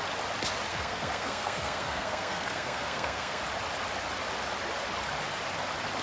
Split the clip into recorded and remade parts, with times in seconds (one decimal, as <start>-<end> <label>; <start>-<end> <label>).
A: 0.0-0.7 recorded; 0.7-3.4 remade; 3.4-6.0 recorded